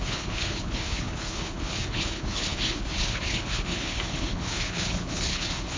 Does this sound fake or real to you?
fake